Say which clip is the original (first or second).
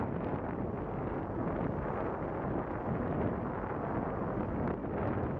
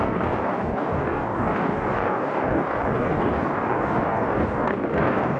first